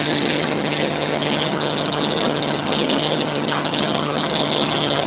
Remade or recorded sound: remade